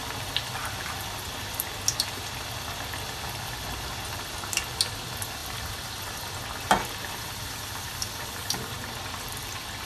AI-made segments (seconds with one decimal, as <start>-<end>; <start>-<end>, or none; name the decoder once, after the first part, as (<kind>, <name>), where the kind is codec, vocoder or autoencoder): 5.4-9.9 (vocoder, BigVGAN v2)